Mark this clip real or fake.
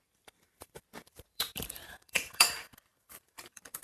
fake